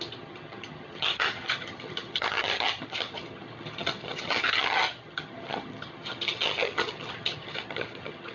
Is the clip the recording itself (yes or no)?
no